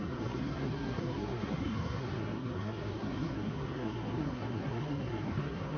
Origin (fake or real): fake